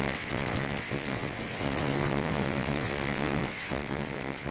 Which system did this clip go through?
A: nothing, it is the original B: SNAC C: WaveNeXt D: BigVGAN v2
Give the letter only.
C